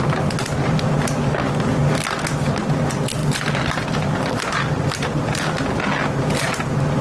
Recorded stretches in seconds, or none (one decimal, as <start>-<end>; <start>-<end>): 0.0-7.0